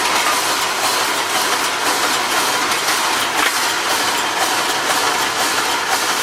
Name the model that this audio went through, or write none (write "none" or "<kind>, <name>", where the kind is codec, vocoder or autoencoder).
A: none